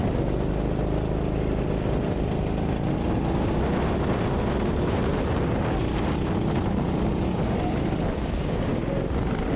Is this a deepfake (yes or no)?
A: no